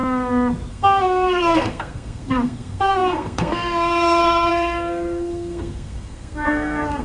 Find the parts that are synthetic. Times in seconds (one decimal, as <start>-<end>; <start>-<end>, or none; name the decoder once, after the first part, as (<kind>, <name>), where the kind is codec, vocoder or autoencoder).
0.7-7.0 (codec, SNAC)